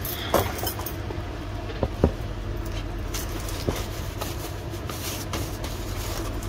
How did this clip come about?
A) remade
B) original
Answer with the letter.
A